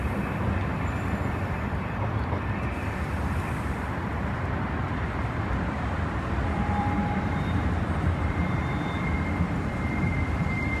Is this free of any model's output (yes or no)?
no